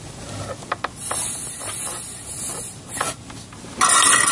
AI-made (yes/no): no